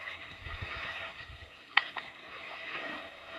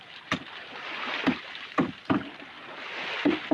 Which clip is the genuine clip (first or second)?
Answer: second